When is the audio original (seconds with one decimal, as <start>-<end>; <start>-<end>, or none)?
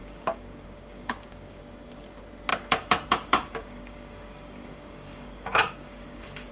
1.6-2.5